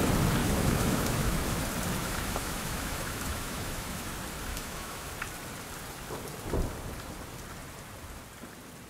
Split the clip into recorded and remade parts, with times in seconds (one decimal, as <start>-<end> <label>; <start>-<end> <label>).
0.0-0.4 recorded; 0.4-1.6 remade; 1.6-2.0 recorded; 2.0-4.1 remade; 4.1-4.5 recorded; 4.5-5.1 remade; 5.1-8.9 recorded